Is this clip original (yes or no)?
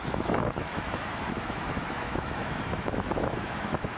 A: no